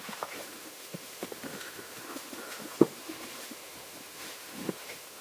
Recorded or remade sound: remade